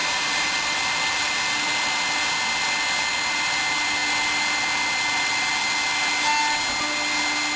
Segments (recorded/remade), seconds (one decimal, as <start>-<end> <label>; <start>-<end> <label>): 0.0-1.3 remade; 1.3-7.6 recorded